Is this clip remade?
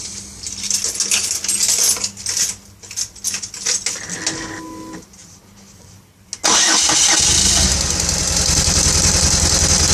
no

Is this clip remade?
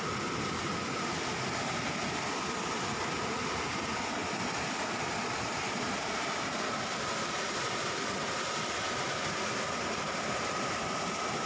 no